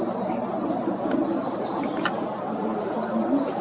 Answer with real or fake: real